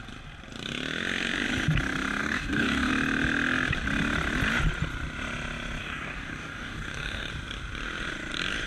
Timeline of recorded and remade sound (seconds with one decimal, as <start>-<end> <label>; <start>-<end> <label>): 0.0-2.2 recorded; 2.2-2.9 remade; 2.9-5.8 recorded; 5.8-7.3 remade; 7.3-8.7 recorded